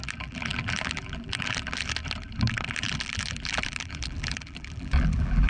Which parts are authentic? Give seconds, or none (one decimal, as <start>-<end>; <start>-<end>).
2.0-2.7